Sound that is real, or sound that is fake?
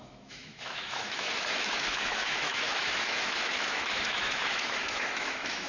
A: fake